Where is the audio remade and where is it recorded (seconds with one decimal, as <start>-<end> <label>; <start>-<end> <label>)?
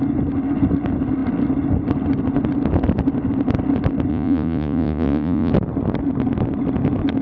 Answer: 0.0-4.1 recorded; 4.1-5.5 remade; 5.5-7.2 recorded